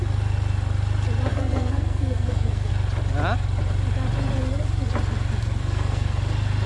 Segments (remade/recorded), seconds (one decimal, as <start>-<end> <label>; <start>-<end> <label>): 0.0-1.3 recorded; 1.3-2.7 remade; 2.7-5.6 recorded; 5.6-6.2 remade; 6.2-6.7 recorded